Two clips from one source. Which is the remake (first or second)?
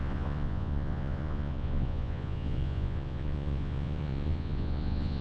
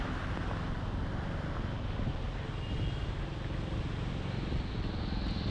first